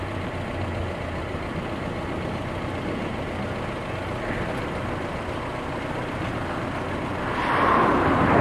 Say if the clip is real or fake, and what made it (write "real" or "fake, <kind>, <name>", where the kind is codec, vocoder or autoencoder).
real